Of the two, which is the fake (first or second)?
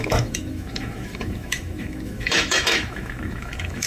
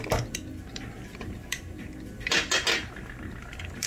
first